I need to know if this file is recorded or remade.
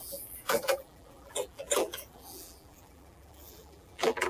remade